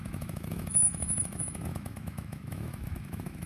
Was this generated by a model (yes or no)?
yes